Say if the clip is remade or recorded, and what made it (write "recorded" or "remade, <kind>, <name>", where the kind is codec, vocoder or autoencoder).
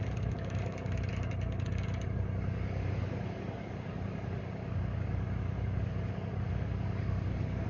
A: remade, codec, DAC